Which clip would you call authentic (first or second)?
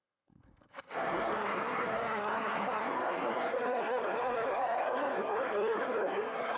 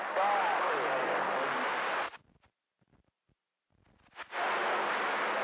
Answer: second